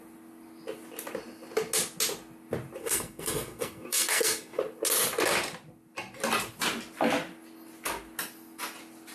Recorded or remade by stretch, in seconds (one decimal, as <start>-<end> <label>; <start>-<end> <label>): 0.0-2.8 recorded; 2.8-4.6 remade; 4.6-9.1 recorded